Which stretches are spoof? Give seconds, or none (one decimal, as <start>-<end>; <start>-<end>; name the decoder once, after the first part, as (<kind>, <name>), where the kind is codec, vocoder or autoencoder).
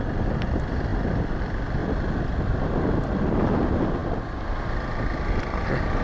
1.8-3.3 (vocoder, BigVGAN v2)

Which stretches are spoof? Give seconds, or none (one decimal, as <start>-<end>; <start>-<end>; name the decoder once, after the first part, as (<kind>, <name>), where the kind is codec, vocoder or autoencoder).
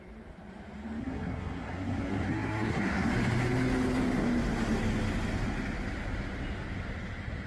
1.0-3.1 (codec, SNAC)